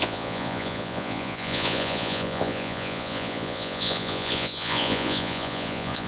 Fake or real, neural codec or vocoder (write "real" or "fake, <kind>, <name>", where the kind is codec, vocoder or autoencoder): fake, vocoder, Vocos